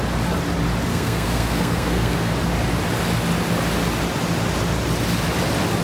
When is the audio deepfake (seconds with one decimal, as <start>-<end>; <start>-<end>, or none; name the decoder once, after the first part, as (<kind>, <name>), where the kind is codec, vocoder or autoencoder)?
0.9-2.3 (codec, SNAC)